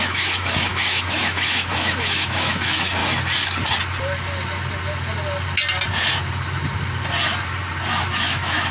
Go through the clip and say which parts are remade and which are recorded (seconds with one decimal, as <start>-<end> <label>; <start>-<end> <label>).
0.0-3.0 remade; 3.0-7.9 recorded; 7.9-8.7 remade

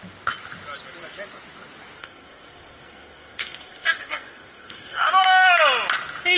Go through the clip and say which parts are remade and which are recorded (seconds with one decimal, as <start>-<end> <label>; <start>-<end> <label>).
0.0-2.0 recorded; 2.0-5.1 remade; 5.1-6.4 recorded

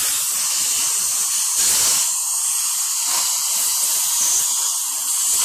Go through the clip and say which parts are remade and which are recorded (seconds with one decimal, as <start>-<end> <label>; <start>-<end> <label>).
0.0-5.4 recorded

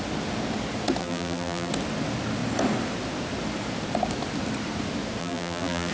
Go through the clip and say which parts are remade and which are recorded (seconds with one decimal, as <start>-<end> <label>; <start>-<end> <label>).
0.0-1.0 recorded; 1.0-1.7 remade; 1.7-5.2 recorded; 5.2-5.9 remade

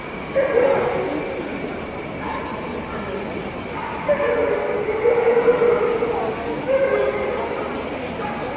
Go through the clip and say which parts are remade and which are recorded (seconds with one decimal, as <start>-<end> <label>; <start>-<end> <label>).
0.0-8.6 recorded